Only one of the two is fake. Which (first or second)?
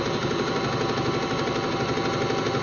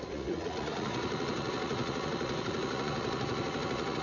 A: second